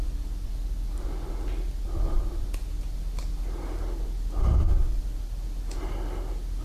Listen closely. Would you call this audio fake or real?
real